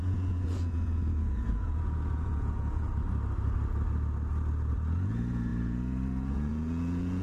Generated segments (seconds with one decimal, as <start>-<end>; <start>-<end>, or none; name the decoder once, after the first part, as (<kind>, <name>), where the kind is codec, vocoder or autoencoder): 0.0-2.9 (vocoder, Vocos); 4.7-7.2